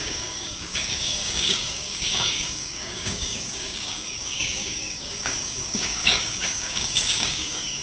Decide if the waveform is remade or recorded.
remade